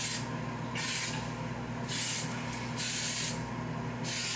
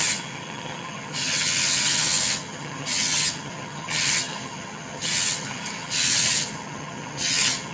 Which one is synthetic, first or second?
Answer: second